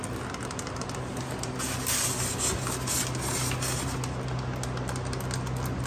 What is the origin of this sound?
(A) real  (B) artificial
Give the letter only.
A